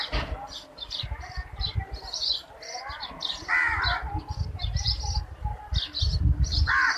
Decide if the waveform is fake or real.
real